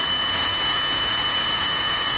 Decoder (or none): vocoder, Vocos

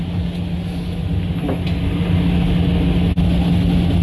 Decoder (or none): none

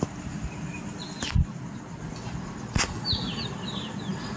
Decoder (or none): none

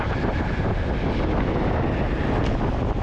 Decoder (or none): none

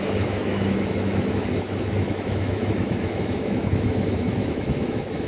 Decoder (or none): autoencoder, DAC-VAE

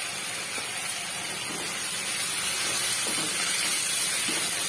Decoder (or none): none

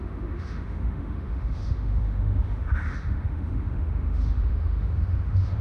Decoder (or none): autoencoder, DAC-VAE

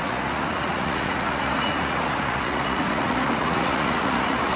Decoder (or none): vocoder, Vocos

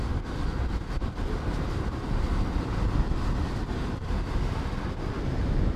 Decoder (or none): none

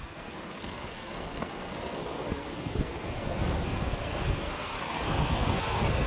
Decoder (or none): codec, SNAC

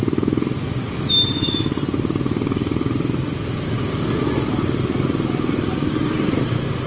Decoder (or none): none